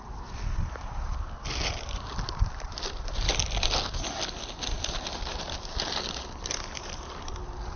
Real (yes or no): yes